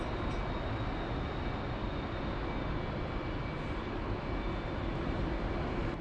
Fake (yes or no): no